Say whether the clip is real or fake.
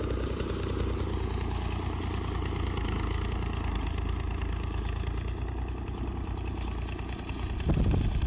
real